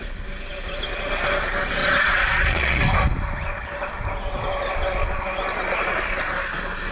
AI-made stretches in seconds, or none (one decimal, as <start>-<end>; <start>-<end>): 1.8-2.8